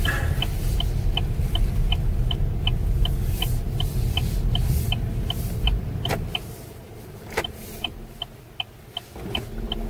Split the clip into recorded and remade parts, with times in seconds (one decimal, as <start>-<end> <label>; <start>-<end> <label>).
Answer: 0.0-6.4 recorded; 6.4-7.9 remade; 7.9-9.9 recorded